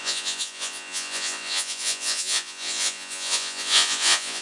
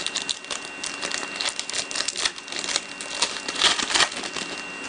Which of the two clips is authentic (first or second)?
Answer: second